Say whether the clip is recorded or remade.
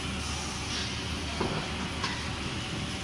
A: recorded